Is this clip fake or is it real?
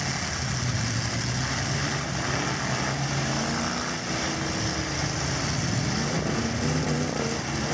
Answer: real